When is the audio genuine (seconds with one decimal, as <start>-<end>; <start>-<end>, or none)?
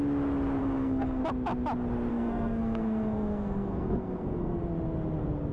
0.0-0.6; 1.2-2.1; 4.6-5.5